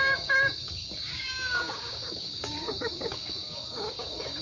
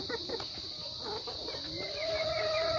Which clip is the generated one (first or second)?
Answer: first